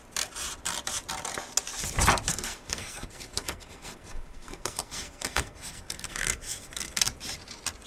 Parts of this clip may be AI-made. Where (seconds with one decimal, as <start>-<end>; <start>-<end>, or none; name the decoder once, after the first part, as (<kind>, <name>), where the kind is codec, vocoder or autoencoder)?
2.3-7.0 (codec, SNAC)